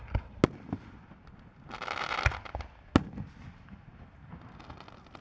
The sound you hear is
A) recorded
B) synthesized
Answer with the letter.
A